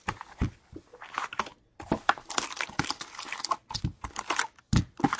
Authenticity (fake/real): real